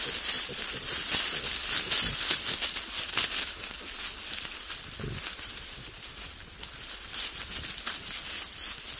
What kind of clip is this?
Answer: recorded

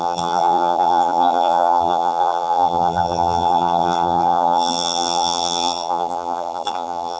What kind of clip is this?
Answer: remade